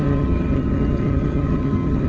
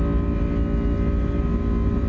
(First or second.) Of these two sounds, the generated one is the first